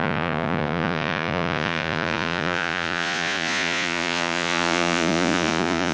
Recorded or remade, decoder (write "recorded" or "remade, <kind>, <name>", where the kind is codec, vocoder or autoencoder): remade, vocoder, Vocos